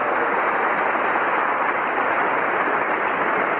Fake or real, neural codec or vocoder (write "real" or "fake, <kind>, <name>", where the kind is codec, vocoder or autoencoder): real